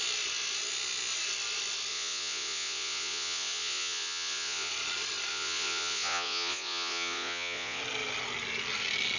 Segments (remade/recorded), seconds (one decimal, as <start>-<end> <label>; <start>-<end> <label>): 0.0-1.9 recorded; 1.9-4.7 remade; 4.7-5.3 recorded; 5.3-7.8 remade; 7.8-9.2 recorded